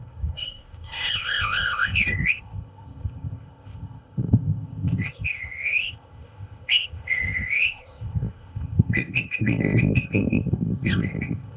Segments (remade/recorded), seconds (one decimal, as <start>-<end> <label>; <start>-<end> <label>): 0.0-11.6 remade